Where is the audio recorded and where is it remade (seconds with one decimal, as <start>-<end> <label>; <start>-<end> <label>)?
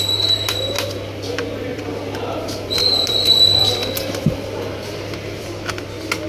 0.0-1.7 recorded; 1.7-5.4 remade; 5.4-6.3 recorded